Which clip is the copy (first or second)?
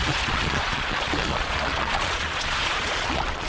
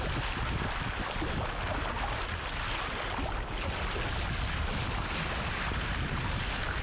first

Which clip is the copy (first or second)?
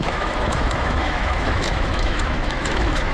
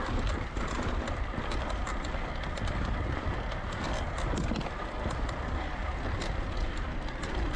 first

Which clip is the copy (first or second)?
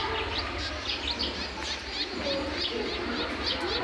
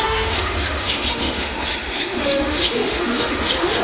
second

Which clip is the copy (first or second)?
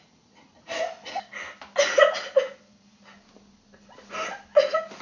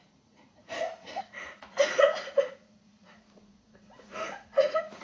second